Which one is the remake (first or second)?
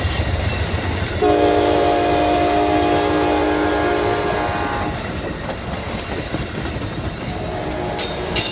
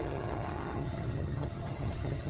second